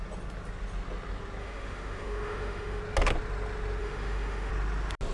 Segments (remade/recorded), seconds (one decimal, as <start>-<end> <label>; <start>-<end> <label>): 0.0-1.4 recorded; 1.4-2.8 remade; 2.8-3.8 recorded; 3.8-4.5 remade; 4.5-5.1 recorded